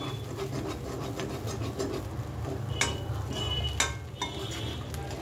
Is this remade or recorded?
recorded